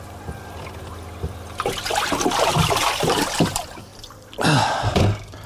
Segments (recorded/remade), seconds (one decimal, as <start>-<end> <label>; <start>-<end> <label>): 0.0-5.5 recorded